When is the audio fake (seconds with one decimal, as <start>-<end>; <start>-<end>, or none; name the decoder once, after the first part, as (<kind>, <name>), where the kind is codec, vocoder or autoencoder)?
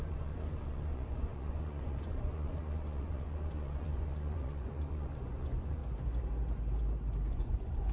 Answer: 0.0-5.8 (vocoder, Vocos); 7.3-7.9